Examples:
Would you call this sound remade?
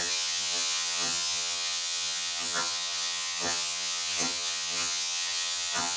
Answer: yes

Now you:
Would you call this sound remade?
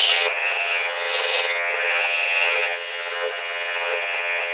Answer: yes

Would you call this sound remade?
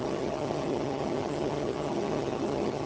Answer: yes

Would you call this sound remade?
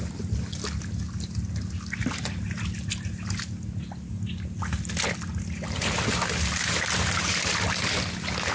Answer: no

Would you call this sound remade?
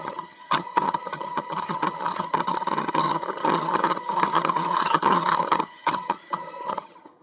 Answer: yes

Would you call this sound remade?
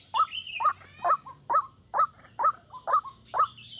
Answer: no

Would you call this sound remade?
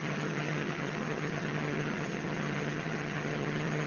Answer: yes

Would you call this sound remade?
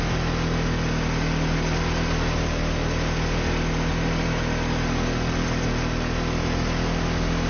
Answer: no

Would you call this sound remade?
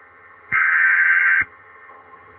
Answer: yes